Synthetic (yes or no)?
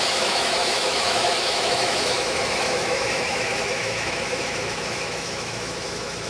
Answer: yes